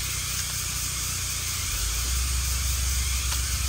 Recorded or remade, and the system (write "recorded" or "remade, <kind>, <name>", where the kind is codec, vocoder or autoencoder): recorded